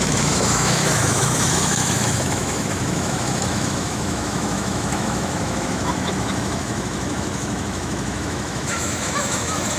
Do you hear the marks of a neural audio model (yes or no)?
yes